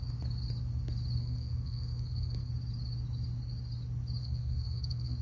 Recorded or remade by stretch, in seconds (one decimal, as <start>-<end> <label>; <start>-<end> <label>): 0.0-1.2 recorded; 1.2-2.5 remade; 2.5-4.2 recorded; 4.2-5.2 remade